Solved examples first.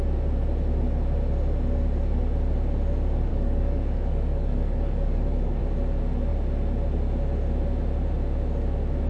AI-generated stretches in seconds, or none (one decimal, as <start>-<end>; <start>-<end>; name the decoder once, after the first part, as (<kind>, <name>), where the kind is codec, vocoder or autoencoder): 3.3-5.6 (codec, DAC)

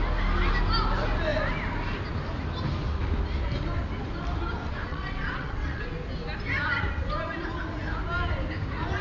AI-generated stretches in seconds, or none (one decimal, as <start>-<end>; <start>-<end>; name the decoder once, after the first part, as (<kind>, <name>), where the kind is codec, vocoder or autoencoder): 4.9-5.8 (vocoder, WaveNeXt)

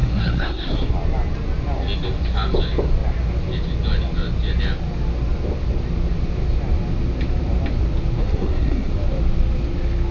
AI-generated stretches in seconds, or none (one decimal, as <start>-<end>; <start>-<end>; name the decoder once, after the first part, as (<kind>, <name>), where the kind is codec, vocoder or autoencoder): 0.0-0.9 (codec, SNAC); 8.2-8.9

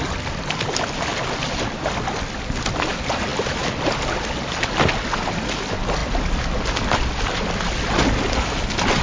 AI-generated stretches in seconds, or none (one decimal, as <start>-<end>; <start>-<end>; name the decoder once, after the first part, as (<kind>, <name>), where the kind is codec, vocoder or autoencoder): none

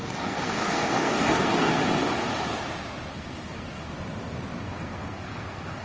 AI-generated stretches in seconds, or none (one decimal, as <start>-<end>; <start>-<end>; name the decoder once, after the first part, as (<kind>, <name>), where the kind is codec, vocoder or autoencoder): 0.0-1.8 (codec, SNAC); 3.1-3.9; 4.6-5.8